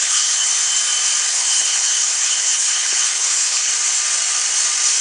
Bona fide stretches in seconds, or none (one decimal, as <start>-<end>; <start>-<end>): 0.5-1.3; 3.7-5.0